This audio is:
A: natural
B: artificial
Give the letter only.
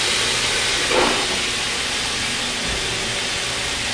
A